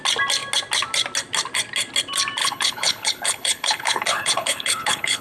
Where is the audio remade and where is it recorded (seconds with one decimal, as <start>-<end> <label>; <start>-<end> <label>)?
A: 0.0-2.4 recorded; 2.4-5.2 remade